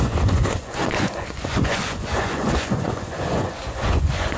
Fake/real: fake